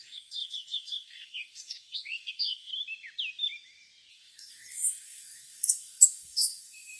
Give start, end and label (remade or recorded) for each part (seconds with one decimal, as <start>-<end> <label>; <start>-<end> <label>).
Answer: 0.0-2.7 remade; 2.7-4.1 recorded; 4.1-7.0 remade

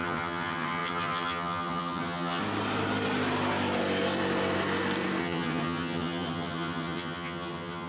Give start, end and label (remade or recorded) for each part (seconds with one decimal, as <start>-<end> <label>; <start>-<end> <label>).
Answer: 0.0-2.4 remade; 2.4-5.2 recorded; 5.2-7.9 remade

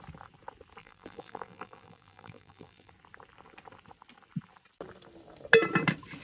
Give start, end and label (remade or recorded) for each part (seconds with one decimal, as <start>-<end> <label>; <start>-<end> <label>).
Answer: 0.0-0.8 recorded; 0.8-2.9 remade; 2.9-6.2 recorded

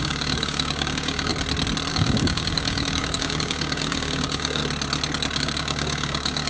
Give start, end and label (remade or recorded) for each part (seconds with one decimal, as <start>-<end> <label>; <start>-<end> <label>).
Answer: 0.0-1.3 remade; 1.3-1.9 recorded; 1.9-4.6 remade; 4.6-5.4 recorded; 5.4-6.5 remade

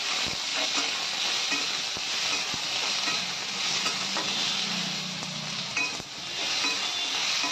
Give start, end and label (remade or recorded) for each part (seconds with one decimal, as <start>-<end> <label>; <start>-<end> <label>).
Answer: 0.0-7.5 recorded

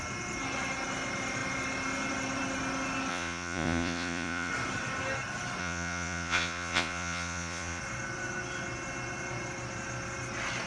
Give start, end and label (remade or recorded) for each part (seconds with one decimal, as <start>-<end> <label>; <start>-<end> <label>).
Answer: 0.0-3.1 recorded; 3.1-4.5 remade; 4.5-5.6 recorded; 5.6-7.8 remade; 7.8-10.7 recorded

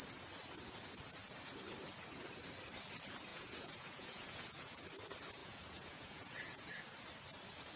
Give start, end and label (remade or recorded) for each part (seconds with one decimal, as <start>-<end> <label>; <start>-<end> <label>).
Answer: 0.0-3.3 recorded; 3.3-4.8 remade; 4.8-5.4 recorded; 5.4-6.8 remade; 6.8-7.8 recorded

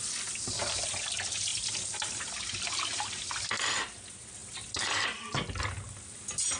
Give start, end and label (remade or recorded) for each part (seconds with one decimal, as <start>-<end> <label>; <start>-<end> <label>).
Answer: 0.0-6.6 recorded